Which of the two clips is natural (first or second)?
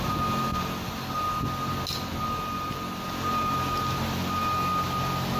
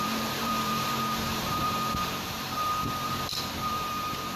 first